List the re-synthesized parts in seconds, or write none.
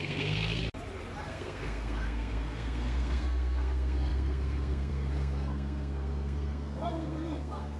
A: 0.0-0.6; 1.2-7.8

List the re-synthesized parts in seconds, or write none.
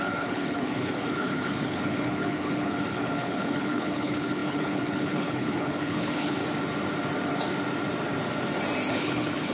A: 0.0-6.4; 8.9-9.5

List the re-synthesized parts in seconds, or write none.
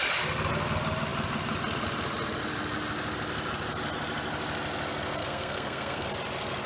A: 5.2-6.1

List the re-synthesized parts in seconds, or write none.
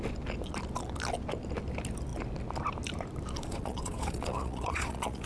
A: 3.5-5.3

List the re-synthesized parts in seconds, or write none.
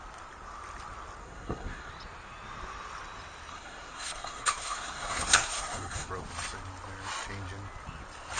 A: 1.2-1.9; 3.5-6.1